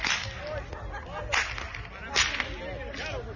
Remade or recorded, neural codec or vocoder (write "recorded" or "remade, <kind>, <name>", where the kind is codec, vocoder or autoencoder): recorded